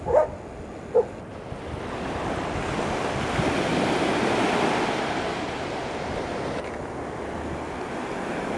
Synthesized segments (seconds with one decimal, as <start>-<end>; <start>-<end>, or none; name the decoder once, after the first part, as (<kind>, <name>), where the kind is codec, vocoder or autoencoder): none